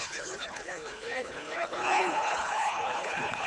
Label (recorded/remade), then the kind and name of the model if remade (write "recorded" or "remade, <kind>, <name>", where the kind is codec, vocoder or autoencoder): remade, codec, HILCodec